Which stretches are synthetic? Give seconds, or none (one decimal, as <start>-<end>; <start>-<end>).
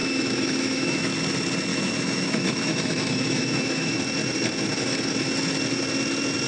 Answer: 0.0-1.1; 1.7-4.0